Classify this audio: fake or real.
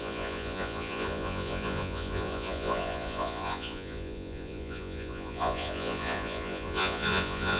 fake